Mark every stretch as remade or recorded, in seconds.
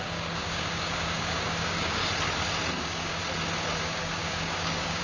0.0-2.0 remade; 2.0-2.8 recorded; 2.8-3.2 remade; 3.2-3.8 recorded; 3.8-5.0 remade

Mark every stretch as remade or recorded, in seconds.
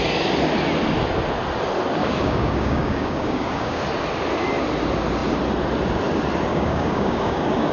0.0-2.0 recorded; 2.0-3.8 remade; 3.8-6.5 recorded; 6.5-7.7 remade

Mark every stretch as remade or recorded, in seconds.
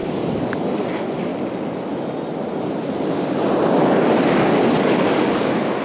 0.0-1.3 remade; 1.3-4.3 recorded; 4.3-5.8 remade